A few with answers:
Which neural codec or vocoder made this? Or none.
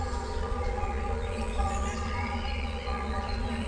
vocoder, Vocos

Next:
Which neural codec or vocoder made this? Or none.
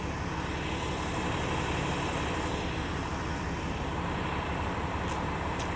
none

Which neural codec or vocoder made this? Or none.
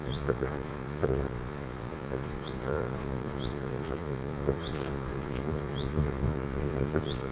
vocoder, Vocos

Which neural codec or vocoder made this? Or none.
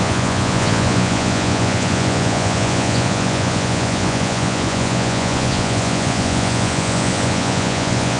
vocoder, Vocos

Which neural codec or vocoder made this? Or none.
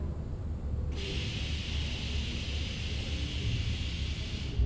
none